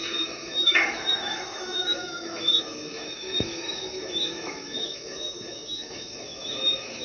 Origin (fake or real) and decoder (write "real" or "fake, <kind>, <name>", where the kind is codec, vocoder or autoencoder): fake, autoencoder, DAC-VAE